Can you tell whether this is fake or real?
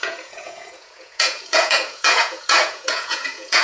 fake